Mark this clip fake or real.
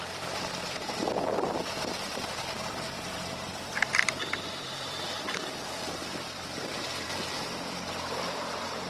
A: fake